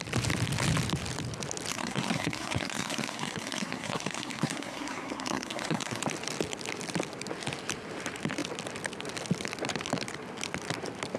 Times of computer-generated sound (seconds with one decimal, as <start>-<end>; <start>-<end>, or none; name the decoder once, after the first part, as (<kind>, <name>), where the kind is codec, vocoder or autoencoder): 1.7-6.0 (codec, SNAC)